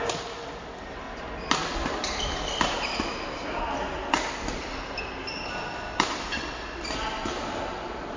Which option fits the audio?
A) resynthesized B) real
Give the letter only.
B